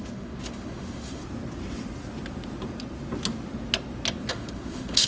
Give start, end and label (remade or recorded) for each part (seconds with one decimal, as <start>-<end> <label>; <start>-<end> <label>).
0.0-1.2 remade; 1.2-4.3 recorded; 4.3-5.1 remade